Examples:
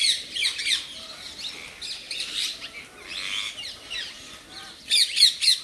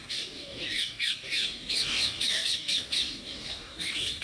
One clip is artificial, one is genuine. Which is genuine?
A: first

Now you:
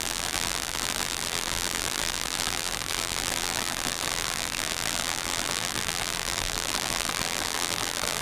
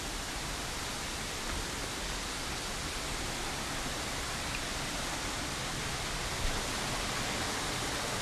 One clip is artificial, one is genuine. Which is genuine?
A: second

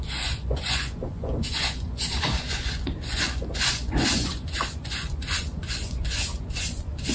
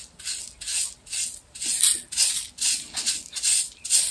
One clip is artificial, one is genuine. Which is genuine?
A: second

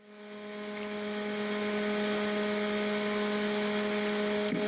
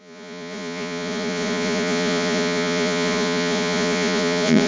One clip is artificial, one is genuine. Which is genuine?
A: first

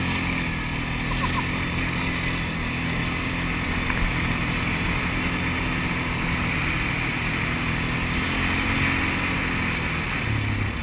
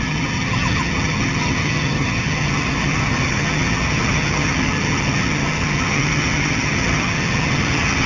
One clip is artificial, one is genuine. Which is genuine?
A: first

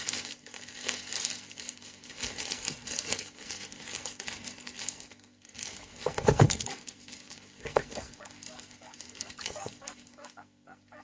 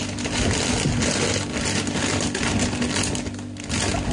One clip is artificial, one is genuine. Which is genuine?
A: second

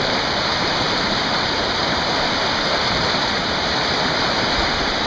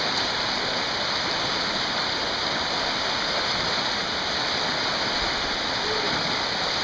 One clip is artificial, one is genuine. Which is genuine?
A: second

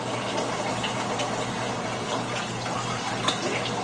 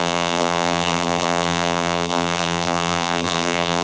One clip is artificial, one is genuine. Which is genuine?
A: first